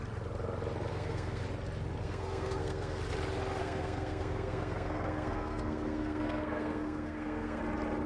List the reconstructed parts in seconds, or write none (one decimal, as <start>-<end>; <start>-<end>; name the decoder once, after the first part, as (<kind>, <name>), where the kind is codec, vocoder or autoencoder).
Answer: 0.9-1.4 (codec, SNAC); 2.0-3.0; 3.6-7.6